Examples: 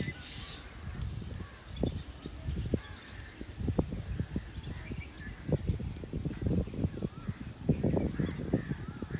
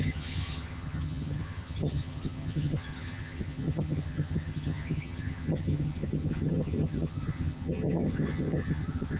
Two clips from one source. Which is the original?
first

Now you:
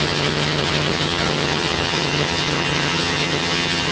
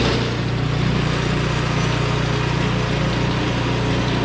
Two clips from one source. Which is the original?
second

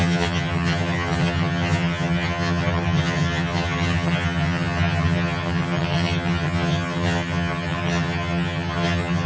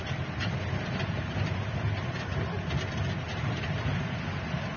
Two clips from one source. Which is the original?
second